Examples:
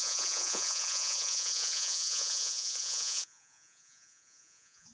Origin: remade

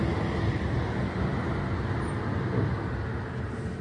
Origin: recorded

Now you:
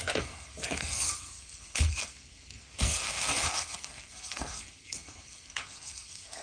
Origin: remade